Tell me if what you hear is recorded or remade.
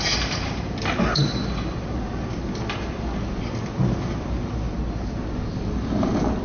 recorded